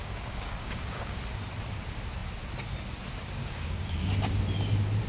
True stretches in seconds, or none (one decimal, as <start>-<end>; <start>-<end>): 1.2-3.4; 4.1-5.1